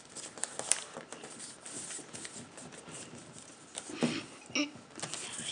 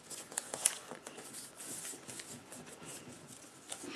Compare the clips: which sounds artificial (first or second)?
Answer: second